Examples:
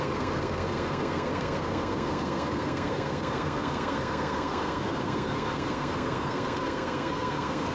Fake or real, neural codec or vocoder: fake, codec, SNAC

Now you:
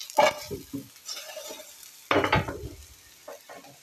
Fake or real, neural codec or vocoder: real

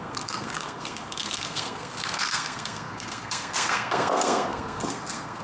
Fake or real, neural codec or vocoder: fake, codec, SNAC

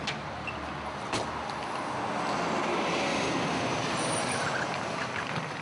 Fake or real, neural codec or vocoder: real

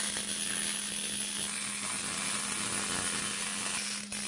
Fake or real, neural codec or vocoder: real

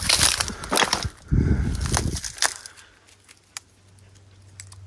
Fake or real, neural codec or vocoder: real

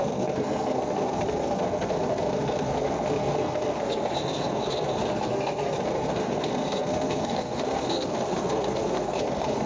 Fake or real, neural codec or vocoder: fake, codec, SNAC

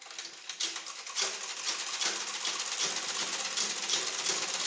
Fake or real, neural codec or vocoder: real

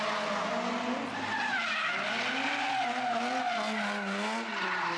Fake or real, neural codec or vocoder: real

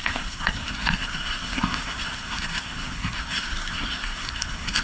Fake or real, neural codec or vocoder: fake, codec, SNAC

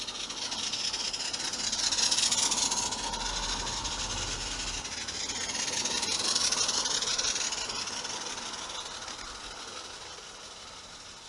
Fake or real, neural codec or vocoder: real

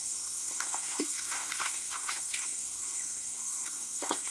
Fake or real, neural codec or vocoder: fake, codec, SNAC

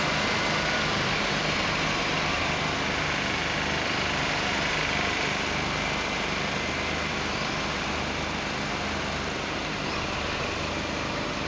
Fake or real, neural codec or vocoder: real